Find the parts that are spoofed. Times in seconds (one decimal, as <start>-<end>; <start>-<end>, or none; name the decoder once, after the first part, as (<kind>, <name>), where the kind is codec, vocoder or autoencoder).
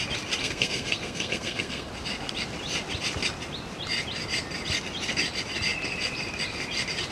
0.4-1.9 (codec, SNAC)